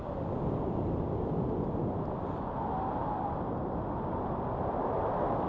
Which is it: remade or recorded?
recorded